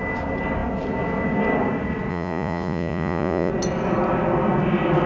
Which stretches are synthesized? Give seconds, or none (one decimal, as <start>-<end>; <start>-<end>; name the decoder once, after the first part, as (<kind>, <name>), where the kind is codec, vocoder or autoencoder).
2.1-3.5 (vocoder, Vocos)